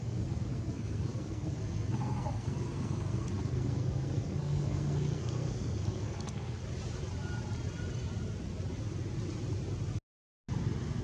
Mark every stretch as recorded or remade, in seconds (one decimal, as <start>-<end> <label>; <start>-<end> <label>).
0.0-6.6 remade; 6.6-11.0 recorded